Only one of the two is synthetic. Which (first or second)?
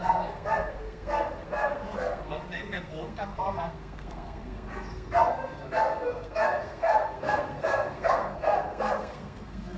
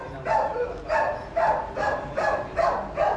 first